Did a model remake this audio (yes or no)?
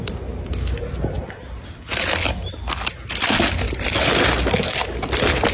no